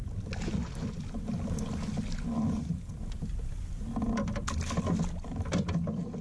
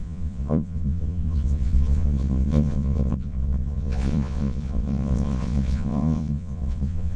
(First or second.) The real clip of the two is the first